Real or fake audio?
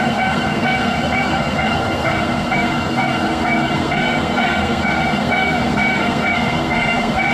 fake